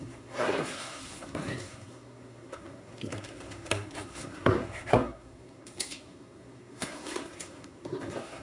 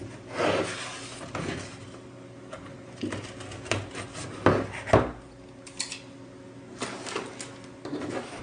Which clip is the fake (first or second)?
first